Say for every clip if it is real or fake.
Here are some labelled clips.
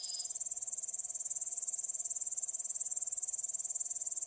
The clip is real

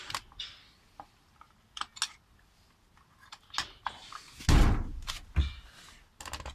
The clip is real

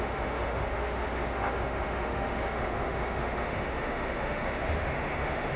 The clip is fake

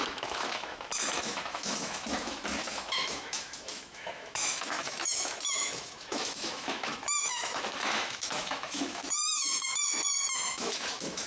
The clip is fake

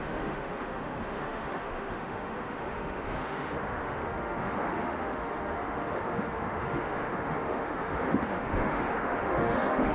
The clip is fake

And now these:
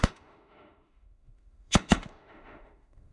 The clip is fake